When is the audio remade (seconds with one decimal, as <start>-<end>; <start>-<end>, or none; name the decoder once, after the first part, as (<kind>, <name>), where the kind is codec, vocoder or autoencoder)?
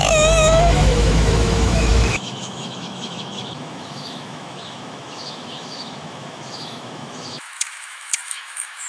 0.0-8.9 (autoencoder, DAC-VAE)